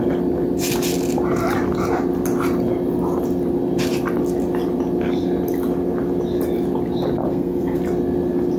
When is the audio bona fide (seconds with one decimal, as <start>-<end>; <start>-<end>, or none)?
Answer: 0.0-7.3; 7.8-8.6